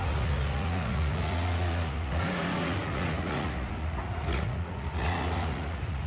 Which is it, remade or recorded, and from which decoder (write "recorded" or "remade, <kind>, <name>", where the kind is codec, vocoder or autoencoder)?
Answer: remade, vocoder, Vocos